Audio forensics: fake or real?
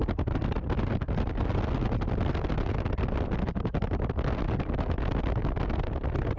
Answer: real